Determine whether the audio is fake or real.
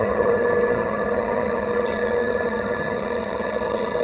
fake